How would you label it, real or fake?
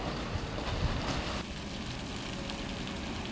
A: real